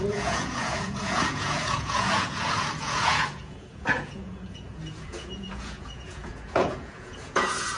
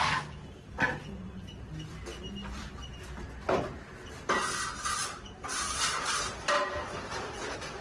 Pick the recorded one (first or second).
second